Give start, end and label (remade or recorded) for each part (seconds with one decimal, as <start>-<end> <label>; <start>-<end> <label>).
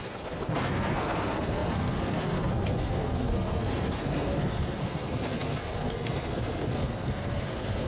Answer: 0.0-7.9 remade